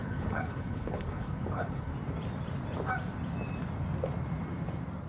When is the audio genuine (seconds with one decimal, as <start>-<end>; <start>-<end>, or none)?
1.9-5.1